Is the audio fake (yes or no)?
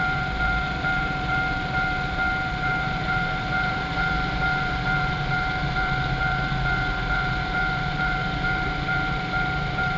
yes